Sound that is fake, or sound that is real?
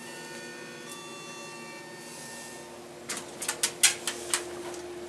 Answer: real